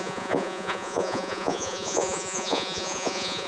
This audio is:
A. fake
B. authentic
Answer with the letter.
A